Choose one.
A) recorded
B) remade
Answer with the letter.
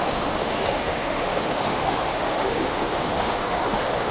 B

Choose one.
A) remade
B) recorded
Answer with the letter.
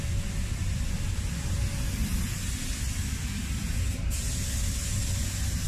B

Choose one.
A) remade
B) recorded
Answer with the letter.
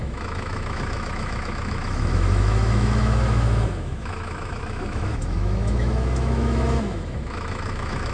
A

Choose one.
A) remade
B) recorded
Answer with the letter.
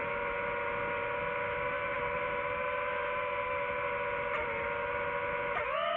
B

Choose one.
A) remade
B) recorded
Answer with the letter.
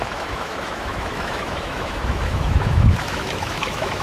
A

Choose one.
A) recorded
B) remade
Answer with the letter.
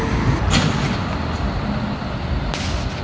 A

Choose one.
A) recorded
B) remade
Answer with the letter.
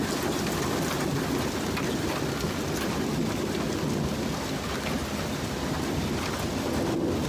A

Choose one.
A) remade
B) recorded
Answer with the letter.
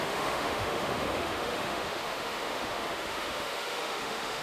A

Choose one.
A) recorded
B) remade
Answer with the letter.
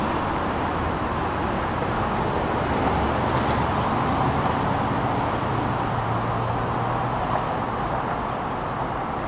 A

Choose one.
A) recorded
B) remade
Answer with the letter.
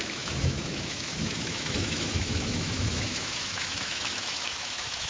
B